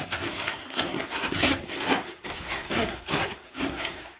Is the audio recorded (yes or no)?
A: no